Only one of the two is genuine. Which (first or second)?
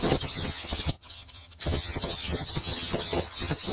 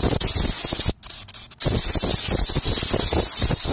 second